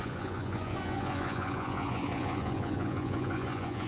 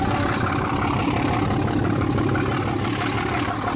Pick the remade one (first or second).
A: first